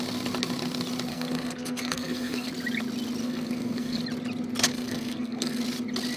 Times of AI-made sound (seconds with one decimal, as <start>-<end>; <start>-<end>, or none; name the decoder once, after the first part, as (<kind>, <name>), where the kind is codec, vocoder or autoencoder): 1.1-2.5 (codec, SNAC); 3.2-4.0; 4.7-5.6